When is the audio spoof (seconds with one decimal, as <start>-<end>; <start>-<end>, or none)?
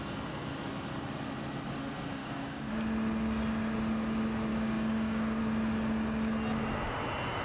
2.2-2.7; 4.5-5.4